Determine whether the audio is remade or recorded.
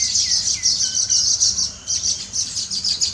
recorded